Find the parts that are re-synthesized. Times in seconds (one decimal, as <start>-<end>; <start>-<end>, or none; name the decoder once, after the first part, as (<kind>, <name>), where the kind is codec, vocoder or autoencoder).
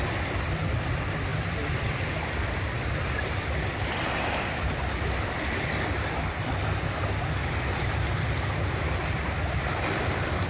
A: none